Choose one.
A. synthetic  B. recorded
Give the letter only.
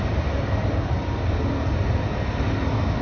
B